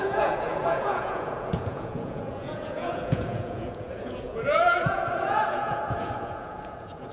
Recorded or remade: remade